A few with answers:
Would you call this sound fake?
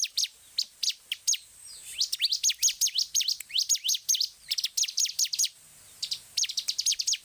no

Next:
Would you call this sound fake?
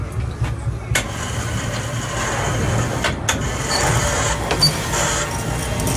no